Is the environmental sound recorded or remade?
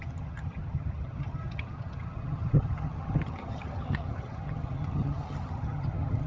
remade